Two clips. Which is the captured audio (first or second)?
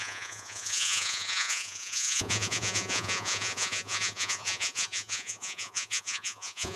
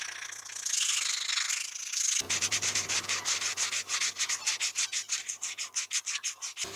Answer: second